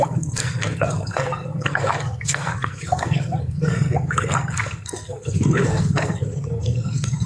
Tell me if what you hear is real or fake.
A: fake